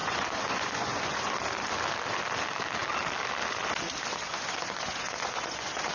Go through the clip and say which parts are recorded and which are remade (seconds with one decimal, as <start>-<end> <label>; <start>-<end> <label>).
0.0-1.3 remade; 1.3-4.1 recorded; 4.1-5.9 remade